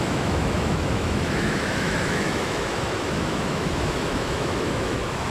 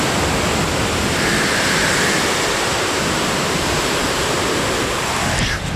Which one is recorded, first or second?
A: second